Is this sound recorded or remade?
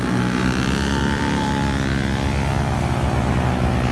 recorded